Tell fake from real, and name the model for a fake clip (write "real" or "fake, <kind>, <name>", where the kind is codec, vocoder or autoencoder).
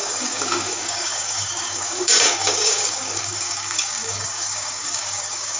fake, codec, DAC